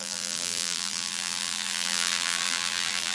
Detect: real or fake fake